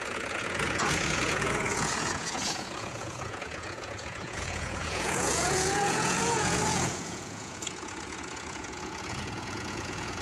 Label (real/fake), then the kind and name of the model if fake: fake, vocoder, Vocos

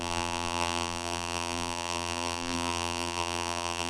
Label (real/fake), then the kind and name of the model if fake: fake, vocoder, BigVGAN v2